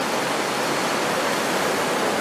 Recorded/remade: recorded